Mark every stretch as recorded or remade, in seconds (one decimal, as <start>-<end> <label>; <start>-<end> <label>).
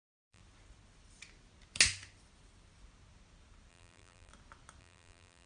0.0-0.4 remade; 0.4-3.7 recorded; 3.7-4.3 remade; 4.3-4.8 recorded; 4.8-5.5 remade